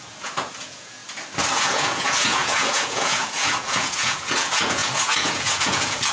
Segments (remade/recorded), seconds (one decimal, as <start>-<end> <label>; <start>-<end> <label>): 0.0-1.0 remade; 1.0-1.5 recorded; 1.5-6.1 remade